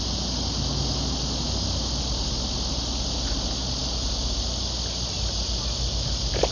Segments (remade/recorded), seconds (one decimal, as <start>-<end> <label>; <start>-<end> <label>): 0.0-6.5 recorded